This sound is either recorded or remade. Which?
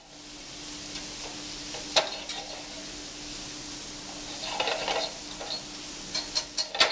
recorded